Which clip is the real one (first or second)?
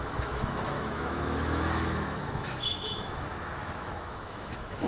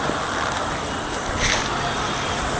second